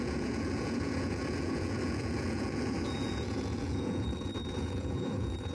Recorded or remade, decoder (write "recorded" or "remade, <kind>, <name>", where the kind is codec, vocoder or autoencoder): remade, vocoder, Vocos